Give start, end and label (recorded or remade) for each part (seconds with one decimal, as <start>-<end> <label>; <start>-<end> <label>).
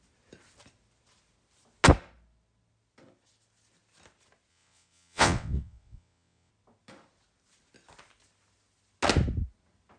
0.0-4.5 recorded; 4.5-6.5 remade; 6.5-10.0 recorded